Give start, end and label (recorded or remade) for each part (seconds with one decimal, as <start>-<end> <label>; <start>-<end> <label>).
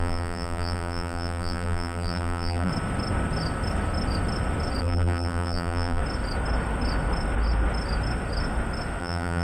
0.0-2.7 remade; 2.7-4.8 recorded; 4.8-6.0 remade; 6.0-9.0 recorded; 9.0-9.4 remade